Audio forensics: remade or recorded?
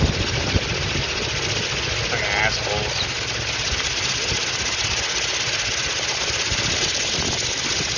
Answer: recorded